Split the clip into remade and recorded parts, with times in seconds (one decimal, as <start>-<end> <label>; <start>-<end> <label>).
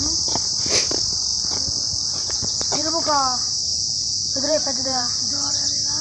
0.0-1.3 recorded; 1.3-2.9 remade; 2.9-3.7 recorded; 3.7-5.5 remade; 5.5-6.0 recorded